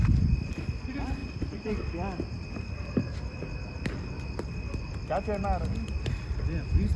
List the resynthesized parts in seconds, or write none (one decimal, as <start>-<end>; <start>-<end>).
none